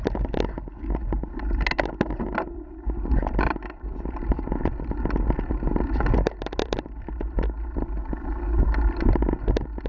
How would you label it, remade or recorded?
recorded